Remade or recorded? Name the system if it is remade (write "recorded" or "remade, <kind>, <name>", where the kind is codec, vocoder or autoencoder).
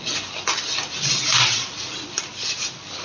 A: recorded